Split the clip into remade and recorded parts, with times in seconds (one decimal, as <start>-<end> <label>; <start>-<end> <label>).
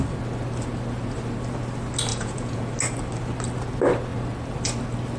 0.0-2.1 recorded; 2.1-2.7 remade; 2.7-5.2 recorded